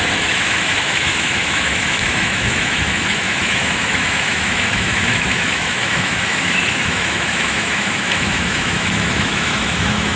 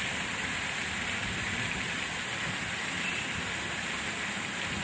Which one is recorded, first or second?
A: second